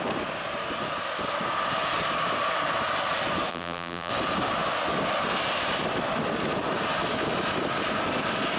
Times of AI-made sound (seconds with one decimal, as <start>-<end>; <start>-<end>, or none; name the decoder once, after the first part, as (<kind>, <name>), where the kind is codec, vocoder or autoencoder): 3.5-4.1 (vocoder, BigVGAN v2)